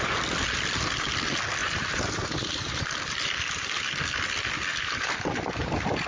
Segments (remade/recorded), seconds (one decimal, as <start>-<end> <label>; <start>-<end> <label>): 0.0-1.6 recorded; 1.6-2.8 remade; 2.8-4.7 recorded; 4.7-6.1 remade

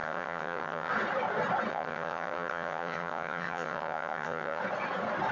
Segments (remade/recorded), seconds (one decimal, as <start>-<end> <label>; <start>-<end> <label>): 0.0-0.9 remade; 0.9-1.7 recorded; 1.7-4.6 remade; 4.6-5.3 recorded

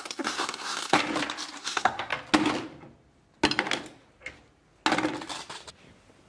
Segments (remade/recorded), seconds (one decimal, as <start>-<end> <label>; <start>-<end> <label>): 0.0-1.0 remade; 1.0-1.6 recorded; 1.6-2.1 remade; 2.1-6.3 recorded

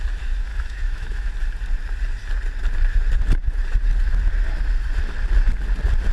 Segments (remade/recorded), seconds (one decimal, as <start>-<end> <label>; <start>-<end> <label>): 0.0-0.5 recorded; 0.5-1.3 remade; 1.3-6.1 recorded

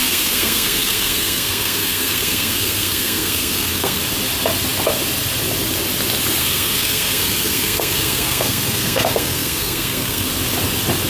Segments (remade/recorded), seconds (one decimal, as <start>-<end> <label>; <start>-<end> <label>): 0.0-4.0 remade; 4.0-6.4 recorded; 6.4-10.3 remade; 10.3-11.1 recorded

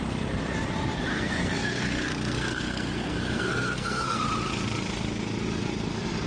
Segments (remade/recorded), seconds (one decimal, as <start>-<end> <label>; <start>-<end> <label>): 0.0-1.1 recorded; 1.1-4.2 remade; 4.2-6.3 recorded